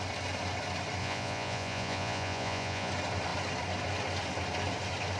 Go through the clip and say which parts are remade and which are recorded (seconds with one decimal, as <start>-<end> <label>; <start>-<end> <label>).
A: 0.0-1.0 recorded; 1.0-2.9 remade; 2.9-5.2 recorded